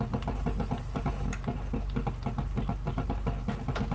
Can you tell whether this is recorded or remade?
recorded